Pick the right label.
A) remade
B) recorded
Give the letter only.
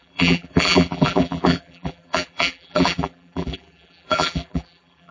A